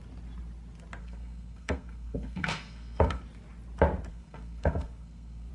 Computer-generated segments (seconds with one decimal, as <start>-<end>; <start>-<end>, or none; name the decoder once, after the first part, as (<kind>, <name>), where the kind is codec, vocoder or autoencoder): 1.0-3.2 (codec, SNAC); 4.1-5.5